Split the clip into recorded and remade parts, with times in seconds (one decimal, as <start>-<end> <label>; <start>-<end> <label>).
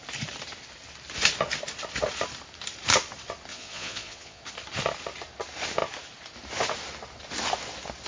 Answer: 0.0-3.5 recorded; 3.5-4.4 remade; 4.4-8.1 recorded